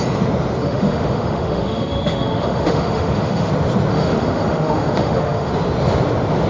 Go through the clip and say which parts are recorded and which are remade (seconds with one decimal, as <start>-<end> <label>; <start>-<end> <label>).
0.0-0.6 recorded; 0.6-3.5 remade; 3.5-3.9 recorded; 3.9-5.5 remade; 5.5-6.5 recorded